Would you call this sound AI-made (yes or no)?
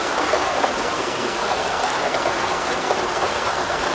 yes